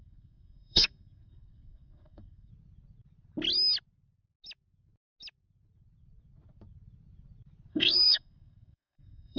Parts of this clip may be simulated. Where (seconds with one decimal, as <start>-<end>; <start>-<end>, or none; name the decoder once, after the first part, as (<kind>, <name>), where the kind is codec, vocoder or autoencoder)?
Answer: 0.0-2.5 (codec, SNAC); 7.7-9.4

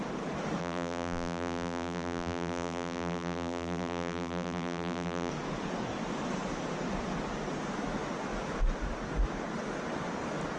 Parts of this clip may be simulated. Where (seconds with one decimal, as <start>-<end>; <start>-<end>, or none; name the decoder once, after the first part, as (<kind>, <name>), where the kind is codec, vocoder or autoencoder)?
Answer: 0.6-5.3 (vocoder, BigVGAN v2)